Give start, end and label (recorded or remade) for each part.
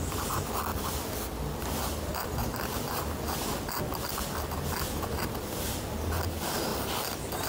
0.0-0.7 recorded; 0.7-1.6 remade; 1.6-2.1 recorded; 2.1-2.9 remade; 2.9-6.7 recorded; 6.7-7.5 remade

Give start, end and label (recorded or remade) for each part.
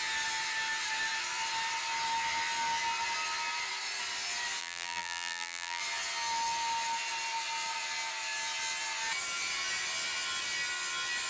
0.0-4.6 recorded; 4.6-5.8 remade; 5.8-11.3 recorded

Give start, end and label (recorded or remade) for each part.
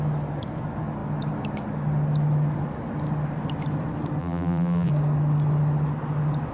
0.0-4.2 recorded; 4.2-4.9 remade; 4.9-6.5 recorded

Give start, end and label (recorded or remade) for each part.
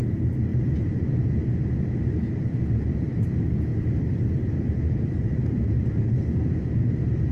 0.0-0.5 recorded; 0.5-1.2 remade; 1.2-3.7 recorded; 3.7-6.1 remade; 6.1-7.3 recorded